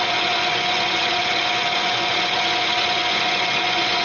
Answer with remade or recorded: remade